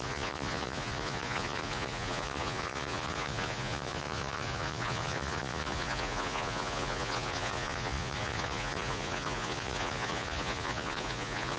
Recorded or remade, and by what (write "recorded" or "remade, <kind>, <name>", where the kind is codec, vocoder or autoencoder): remade, vocoder, Vocos